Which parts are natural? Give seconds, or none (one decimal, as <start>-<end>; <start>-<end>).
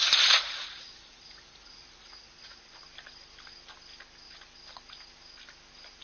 2.8-6.0